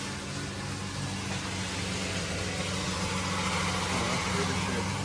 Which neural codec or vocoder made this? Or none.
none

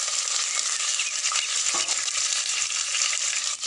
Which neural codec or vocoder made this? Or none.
none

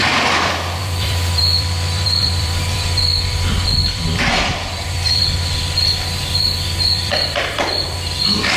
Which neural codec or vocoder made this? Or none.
vocoder, BigVGAN v2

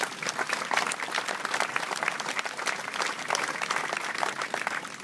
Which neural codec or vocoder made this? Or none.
none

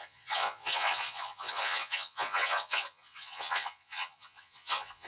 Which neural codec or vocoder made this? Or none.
vocoder, Vocos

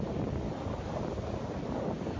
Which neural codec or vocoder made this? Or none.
none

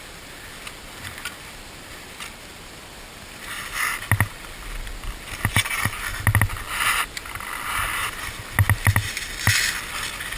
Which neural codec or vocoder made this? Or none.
none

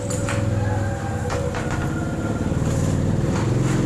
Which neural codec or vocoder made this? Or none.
none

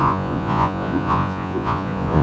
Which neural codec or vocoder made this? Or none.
vocoder, Vocos